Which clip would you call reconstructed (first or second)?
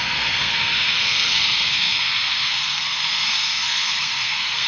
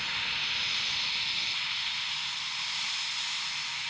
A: first